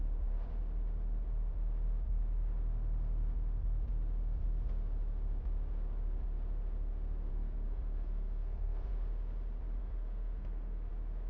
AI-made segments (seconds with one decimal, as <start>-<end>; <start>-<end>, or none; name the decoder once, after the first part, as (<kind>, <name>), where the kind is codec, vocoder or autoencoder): 7.3-8.9 (codec, SNAC); 9.8-10.9

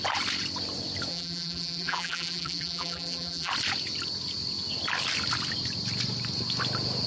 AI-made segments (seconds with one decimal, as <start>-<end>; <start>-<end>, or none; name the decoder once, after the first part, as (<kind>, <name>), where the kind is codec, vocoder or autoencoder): 1.1-3.5 (vocoder, BigVGAN v2)

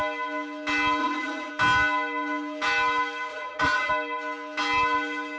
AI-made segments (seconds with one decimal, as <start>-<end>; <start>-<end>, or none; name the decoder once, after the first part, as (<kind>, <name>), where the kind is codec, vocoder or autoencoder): 1.0-1.5 (vocoder, Vocos); 3.3-3.9

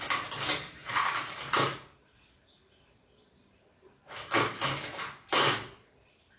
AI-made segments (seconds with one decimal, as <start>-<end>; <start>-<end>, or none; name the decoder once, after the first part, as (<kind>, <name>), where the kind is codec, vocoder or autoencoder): 0.8-1.3 (vocoder, BigVGAN v2)